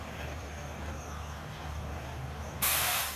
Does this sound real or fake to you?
fake